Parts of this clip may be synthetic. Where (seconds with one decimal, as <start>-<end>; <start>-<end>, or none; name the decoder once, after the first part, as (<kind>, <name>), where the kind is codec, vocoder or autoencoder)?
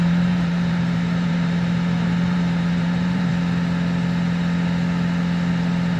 0.0-3.3 (vocoder, BigVGAN v2); 5.5-6.0